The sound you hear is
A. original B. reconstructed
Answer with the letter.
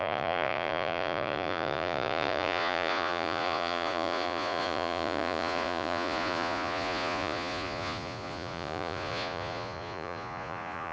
B